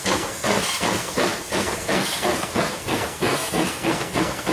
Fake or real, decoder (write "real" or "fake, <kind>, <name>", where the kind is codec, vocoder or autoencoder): fake, codec, SNAC